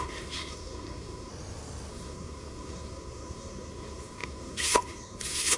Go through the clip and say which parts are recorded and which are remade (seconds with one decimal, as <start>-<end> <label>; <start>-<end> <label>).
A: 0.0-1.3 remade; 1.3-1.9 recorded; 1.9-5.6 remade